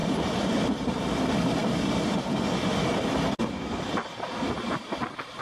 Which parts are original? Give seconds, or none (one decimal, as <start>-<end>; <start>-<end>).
1.0-5.4